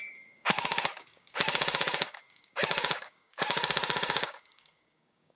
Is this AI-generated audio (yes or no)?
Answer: yes